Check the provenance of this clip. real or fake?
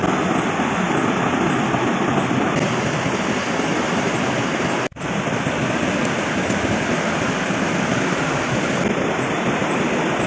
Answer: real